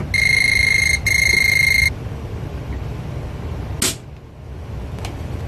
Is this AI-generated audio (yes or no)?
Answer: no